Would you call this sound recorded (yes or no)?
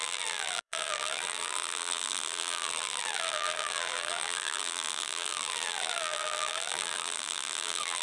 no